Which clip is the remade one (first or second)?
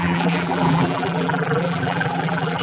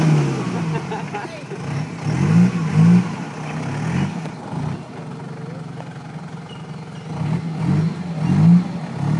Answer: first